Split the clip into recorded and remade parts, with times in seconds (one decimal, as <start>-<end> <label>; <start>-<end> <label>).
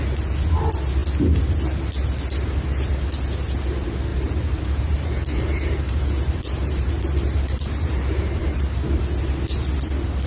0.0-4.1 recorded; 4.1-9.0 remade; 9.0-10.3 recorded